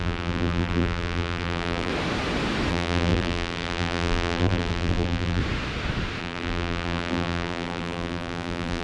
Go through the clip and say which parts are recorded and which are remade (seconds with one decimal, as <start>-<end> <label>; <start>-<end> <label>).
0.0-1.9 remade; 1.9-2.7 recorded; 2.7-5.4 remade; 5.4-6.2 recorded; 6.2-8.8 remade